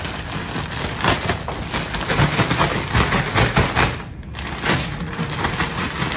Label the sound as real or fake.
real